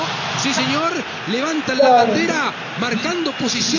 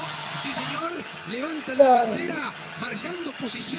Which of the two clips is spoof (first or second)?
second